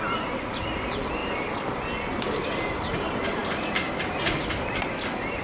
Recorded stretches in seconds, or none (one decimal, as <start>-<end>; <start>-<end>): 0.0-5.4